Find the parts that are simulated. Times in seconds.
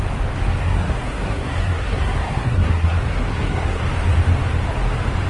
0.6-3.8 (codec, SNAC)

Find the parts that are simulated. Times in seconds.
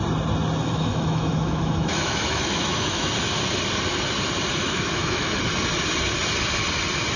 0.6-3.1 (autoencoder, DAC-VAE); 4.6-5.4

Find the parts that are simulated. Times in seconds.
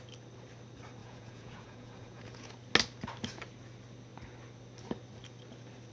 1.0-2.5 (vocoder, Vocos)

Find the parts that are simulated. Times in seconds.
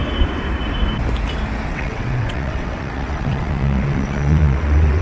1.7-5.0 (vocoder, WaveNeXt)